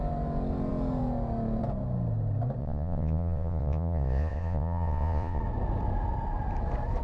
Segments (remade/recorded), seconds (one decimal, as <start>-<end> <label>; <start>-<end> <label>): 0.0-2.6 recorded; 2.6-5.4 remade; 5.4-7.0 recorded